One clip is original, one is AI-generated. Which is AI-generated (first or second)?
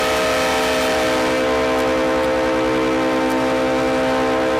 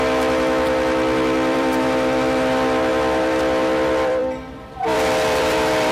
second